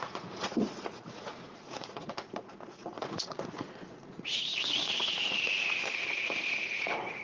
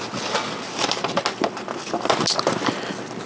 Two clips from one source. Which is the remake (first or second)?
first